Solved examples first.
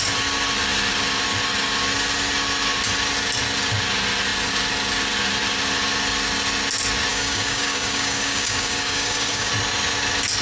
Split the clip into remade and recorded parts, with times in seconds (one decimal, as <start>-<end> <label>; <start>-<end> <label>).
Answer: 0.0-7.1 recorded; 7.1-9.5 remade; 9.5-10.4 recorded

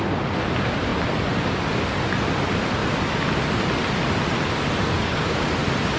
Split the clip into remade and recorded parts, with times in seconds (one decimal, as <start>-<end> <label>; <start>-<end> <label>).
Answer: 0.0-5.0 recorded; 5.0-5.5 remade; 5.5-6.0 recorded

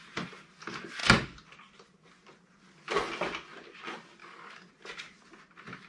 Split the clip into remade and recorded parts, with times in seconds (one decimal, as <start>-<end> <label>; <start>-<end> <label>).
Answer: 0.0-4.2 recorded; 4.2-4.7 remade; 4.7-5.9 recorded

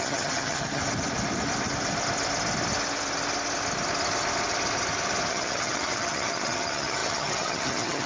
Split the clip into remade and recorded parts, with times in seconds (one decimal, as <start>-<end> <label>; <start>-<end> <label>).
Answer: 0.0-0.8 remade; 0.8-5.3 recorded; 5.3-8.1 remade

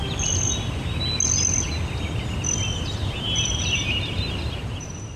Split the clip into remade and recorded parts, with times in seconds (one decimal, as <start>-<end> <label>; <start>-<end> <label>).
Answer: 0.0-3.0 recorded; 3.0-5.2 remade

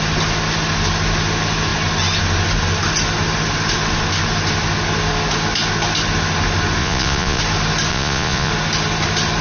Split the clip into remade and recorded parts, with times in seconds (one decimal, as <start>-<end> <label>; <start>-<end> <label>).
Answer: 0.0-6.8 recorded; 6.8-7.4 remade; 7.4-7.9 recorded; 7.9-8.5 remade; 8.5-9.4 recorded